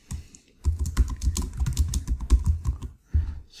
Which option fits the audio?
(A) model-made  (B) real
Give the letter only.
B